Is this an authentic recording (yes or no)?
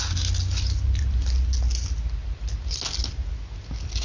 yes